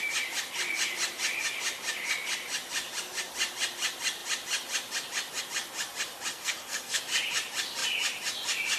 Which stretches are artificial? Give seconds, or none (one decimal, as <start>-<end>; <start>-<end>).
6.3-7.0